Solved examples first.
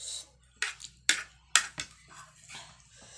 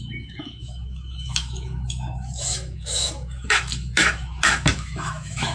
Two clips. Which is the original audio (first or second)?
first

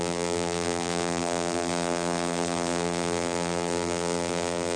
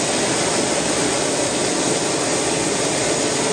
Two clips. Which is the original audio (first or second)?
second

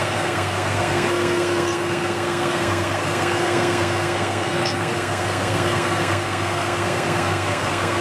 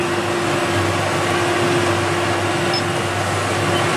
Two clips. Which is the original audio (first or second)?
second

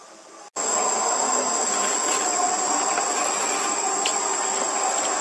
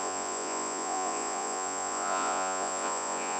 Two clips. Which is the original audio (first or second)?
first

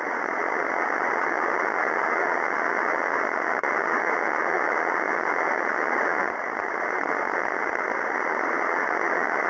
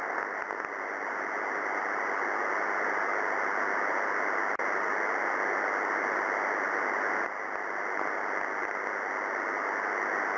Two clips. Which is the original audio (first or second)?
second